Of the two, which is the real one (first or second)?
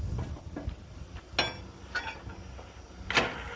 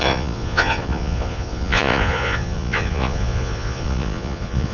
first